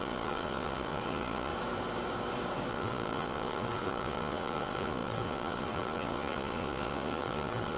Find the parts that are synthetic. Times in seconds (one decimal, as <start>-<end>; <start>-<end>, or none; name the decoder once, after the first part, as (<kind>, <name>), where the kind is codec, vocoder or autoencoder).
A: 0.0-1.5 (vocoder, Vocos); 2.7-7.8